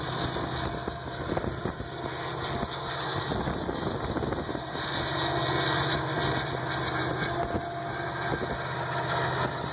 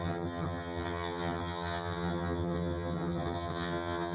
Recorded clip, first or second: first